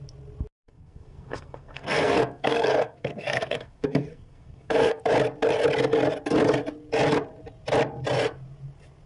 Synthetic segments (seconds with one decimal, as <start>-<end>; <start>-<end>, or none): 0.6-5.0